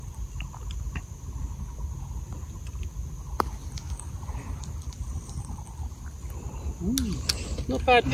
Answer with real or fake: real